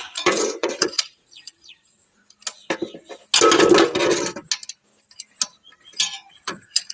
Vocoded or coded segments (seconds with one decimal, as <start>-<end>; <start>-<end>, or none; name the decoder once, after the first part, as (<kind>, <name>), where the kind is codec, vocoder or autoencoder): 0.0-2.2 (vocoder, Vocos); 6.3-6.9